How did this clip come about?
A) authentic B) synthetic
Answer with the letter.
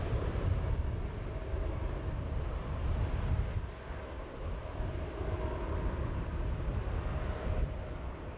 A